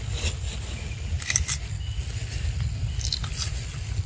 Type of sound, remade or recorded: recorded